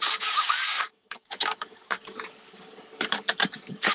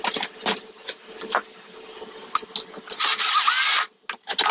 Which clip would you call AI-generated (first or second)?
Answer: first